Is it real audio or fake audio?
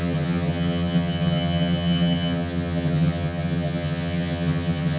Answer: fake